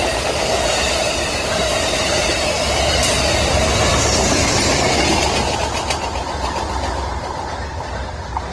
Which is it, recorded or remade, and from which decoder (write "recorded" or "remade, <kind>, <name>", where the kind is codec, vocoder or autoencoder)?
recorded